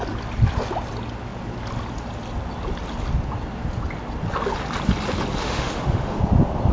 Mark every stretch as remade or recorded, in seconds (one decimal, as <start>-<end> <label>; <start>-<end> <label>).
0.0-5.4 recorded; 5.4-6.2 remade; 6.2-6.7 recorded